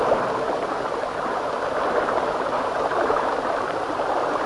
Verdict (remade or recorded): recorded